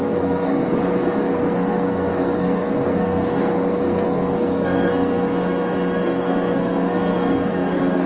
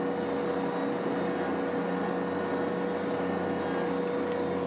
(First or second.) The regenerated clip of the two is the first